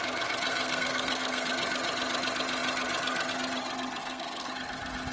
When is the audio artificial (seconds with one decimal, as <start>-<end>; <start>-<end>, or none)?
0.5-1.5; 4.0-4.5